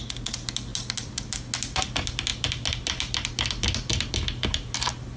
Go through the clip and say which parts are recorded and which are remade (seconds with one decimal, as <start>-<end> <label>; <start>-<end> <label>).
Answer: 0.0-5.2 recorded